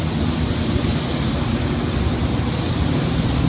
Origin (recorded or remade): recorded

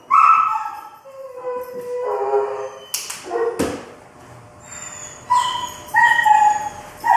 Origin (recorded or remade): recorded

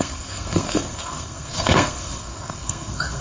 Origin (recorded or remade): remade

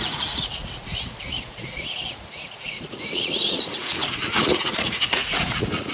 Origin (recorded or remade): remade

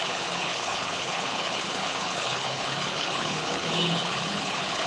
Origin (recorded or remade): remade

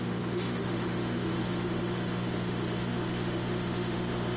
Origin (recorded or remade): remade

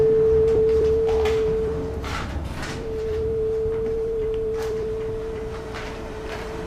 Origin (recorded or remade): remade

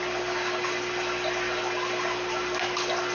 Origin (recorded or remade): recorded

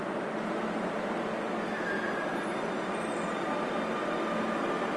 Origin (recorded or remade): recorded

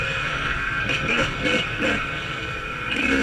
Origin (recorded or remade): remade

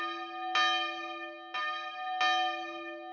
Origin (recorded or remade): recorded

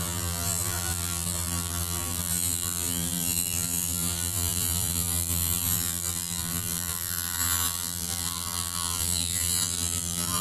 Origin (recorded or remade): remade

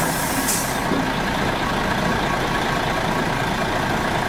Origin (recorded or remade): recorded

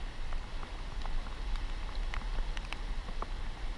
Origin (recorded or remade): recorded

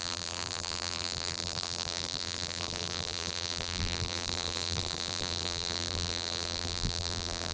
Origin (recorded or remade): remade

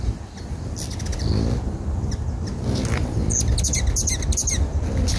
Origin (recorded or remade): recorded